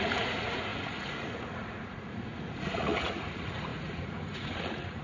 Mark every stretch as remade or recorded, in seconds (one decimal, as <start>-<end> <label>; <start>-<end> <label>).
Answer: 0.0-5.0 remade